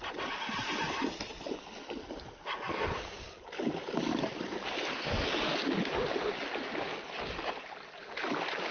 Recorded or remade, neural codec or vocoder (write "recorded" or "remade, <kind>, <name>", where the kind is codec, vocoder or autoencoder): recorded